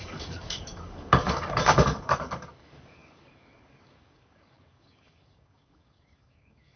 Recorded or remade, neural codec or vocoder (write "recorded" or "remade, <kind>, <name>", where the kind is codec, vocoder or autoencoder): remade, codec, DAC